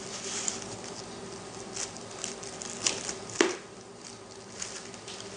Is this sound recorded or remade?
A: recorded